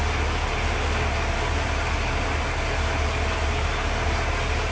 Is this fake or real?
real